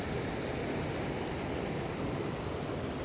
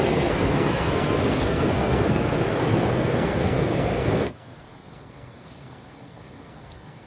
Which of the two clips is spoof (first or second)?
second